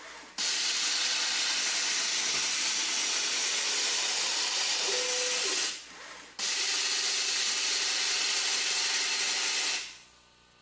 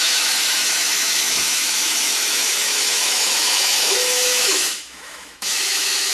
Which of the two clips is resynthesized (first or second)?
second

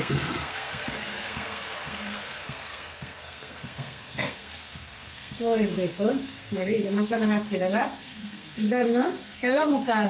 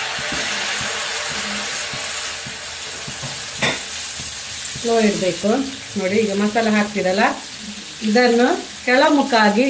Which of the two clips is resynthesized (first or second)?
first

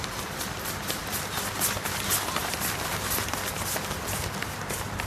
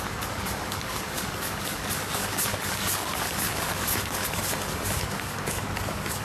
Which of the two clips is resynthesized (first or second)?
second